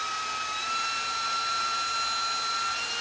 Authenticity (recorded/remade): recorded